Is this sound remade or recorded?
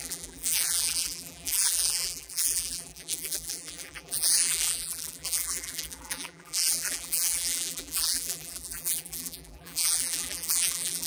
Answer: remade